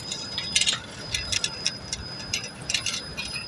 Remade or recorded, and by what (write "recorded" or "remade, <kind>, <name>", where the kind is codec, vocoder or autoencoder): recorded